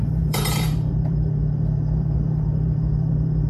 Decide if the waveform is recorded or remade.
remade